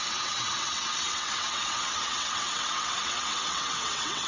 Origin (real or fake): fake